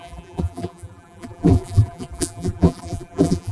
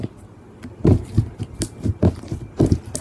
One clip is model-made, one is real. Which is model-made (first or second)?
first